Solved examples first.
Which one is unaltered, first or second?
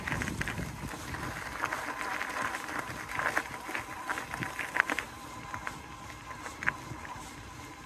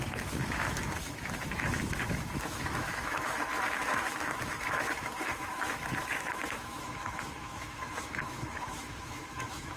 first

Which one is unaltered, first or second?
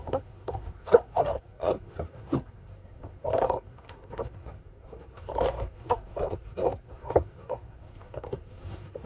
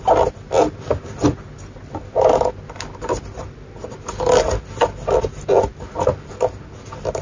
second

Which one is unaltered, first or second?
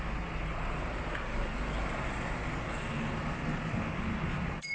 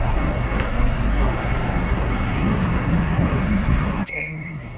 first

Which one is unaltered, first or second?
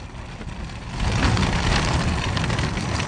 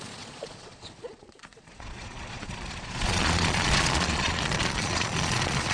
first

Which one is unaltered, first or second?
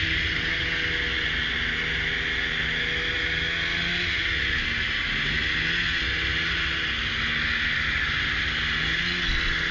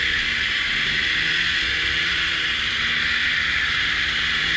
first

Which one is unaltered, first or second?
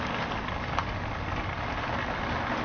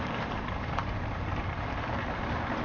first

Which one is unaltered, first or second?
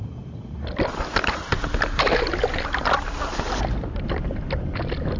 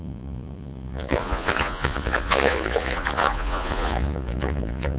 first